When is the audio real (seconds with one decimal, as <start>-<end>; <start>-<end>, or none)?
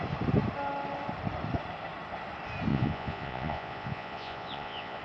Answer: 0.0-2.7